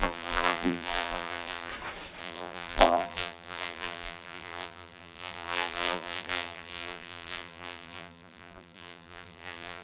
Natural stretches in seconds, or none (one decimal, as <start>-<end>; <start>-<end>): 1.7-2.2